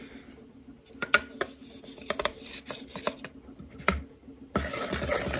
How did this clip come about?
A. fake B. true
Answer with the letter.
B